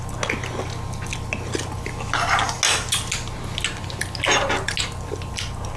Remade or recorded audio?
recorded